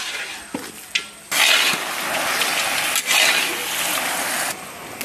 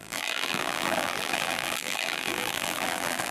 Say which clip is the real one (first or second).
first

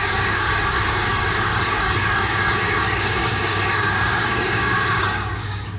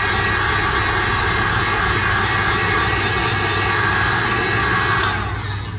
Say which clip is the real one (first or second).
second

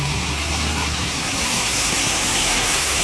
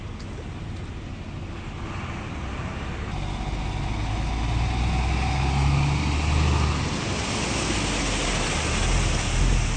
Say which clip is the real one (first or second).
second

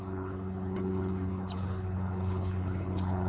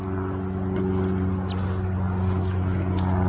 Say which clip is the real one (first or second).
second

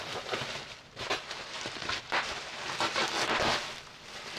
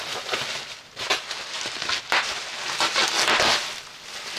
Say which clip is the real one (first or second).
second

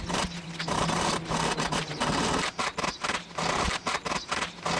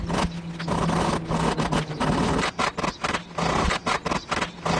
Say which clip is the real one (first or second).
second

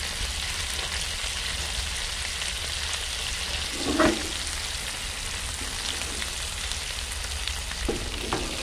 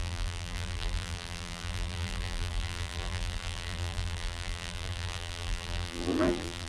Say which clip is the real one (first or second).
first